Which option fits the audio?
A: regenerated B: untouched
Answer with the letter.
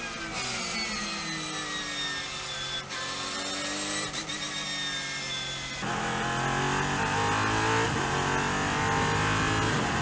B